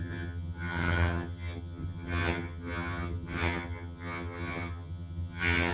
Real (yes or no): no